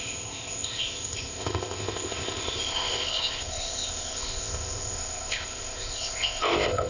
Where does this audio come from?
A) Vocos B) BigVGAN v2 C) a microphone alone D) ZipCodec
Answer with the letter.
D